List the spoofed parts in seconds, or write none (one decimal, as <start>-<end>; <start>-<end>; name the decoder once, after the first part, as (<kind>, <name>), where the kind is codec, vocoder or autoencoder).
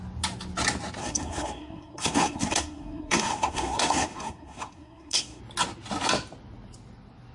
1.0-5.4 (codec, SNAC)